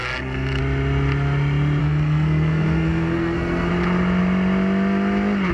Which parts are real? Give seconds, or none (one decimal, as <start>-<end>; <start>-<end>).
0.6-1.8; 3.7-5.5